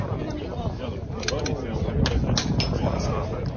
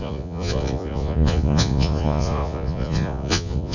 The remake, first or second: second